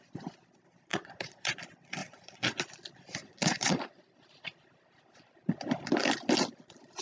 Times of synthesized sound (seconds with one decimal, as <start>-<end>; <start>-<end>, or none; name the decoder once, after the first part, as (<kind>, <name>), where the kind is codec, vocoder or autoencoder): 0.9-1.6 (vocoder, Vocos); 2.0-2.6; 3.2-4.0